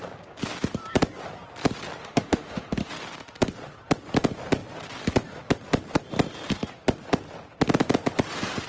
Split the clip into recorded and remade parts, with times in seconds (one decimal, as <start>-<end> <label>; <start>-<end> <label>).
0.0-2.0 recorded; 2.0-2.9 remade; 2.9-8.7 recorded